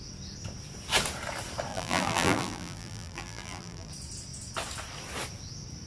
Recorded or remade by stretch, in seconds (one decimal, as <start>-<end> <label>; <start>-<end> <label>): 0.0-1.7 recorded; 1.7-3.9 remade; 3.9-5.9 recorded